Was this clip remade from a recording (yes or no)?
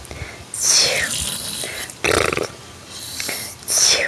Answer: no